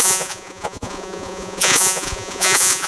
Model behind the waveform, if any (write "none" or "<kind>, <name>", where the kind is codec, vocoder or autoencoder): vocoder, Vocos